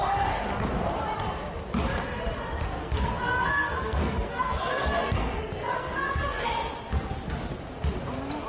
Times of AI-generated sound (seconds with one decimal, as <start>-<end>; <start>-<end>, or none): 2.8-6.5